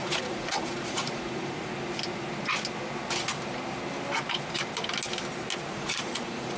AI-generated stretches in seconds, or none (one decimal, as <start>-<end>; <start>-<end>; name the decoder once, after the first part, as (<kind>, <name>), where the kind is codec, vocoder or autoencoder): 0.0-1.7 (vocoder, Vocos); 5.7-6.6